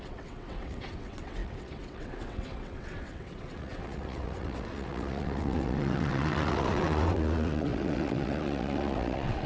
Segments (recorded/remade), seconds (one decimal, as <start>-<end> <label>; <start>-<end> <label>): 0.0-9.5 remade